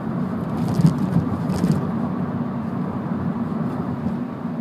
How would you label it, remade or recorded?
recorded